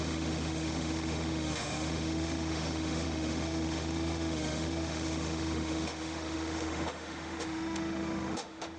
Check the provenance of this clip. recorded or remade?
remade